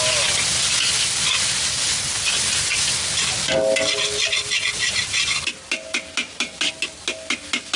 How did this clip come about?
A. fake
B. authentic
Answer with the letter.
B